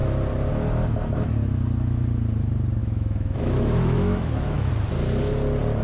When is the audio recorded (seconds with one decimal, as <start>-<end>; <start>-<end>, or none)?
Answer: 0.0-2.8; 4.7-5.8